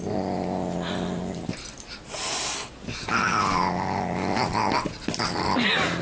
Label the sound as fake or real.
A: real